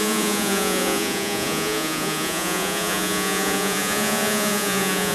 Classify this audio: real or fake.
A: fake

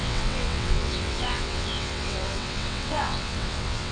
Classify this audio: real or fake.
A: fake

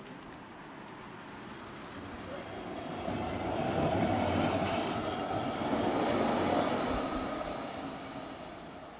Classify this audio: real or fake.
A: real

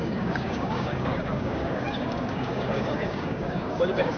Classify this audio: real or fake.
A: fake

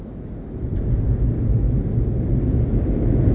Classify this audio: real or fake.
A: real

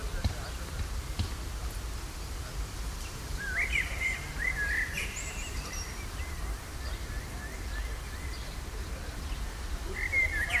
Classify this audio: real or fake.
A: fake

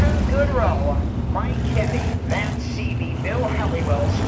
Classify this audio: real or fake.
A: real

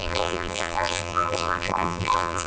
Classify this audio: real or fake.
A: fake